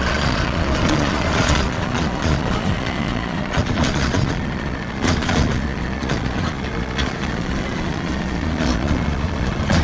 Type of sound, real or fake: fake